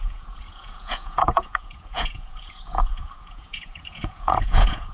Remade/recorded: remade